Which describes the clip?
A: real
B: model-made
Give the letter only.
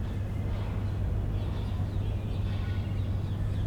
A